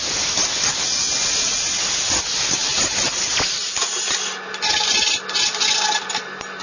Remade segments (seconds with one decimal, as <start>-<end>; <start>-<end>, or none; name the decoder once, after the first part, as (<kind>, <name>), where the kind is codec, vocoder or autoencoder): none